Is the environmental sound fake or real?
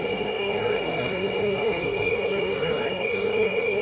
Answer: fake